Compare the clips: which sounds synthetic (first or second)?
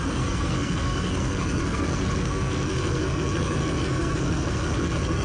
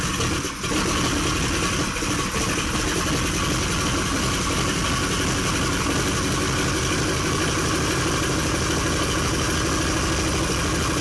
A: first